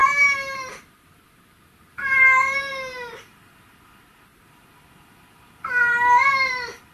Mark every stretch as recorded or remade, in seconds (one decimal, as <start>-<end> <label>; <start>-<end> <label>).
0.0-3.7 remade; 3.7-4.3 recorded; 4.3-6.5 remade; 6.5-6.9 recorded